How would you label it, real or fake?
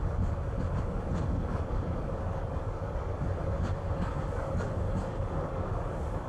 fake